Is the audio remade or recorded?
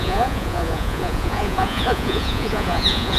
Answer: remade